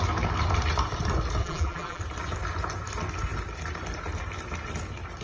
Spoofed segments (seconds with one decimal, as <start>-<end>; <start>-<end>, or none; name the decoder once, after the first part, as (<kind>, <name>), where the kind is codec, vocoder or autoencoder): 1.4-2.0 (vocoder, BigVGAN v2)